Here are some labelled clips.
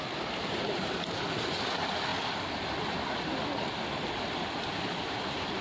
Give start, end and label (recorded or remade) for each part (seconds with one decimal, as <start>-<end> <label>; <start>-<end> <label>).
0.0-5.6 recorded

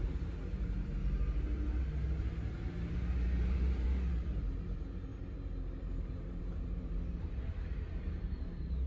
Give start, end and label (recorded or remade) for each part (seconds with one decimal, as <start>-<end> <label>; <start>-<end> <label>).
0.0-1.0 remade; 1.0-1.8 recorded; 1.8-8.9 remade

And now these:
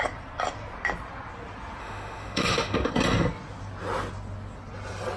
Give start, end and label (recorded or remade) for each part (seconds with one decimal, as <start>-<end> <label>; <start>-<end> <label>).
0.0-1.8 recorded; 1.8-2.9 remade; 2.9-5.2 recorded

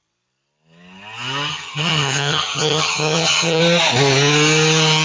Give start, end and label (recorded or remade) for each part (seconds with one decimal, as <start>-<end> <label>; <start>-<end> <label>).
0.0-1.5 recorded; 1.5-3.6 remade; 3.6-5.0 recorded